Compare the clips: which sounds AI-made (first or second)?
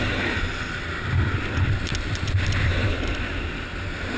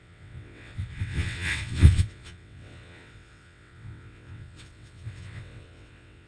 second